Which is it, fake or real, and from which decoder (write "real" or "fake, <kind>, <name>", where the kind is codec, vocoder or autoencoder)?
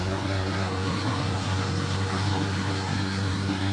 fake, codec, SNAC